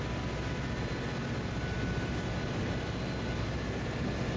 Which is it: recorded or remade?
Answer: recorded